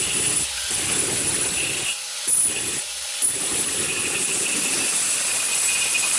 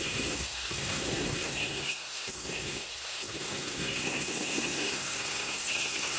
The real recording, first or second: first